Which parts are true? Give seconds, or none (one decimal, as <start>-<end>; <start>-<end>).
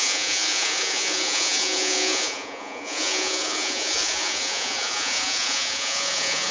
none